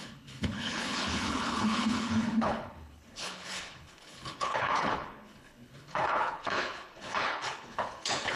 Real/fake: fake